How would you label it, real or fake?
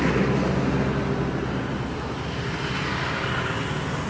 real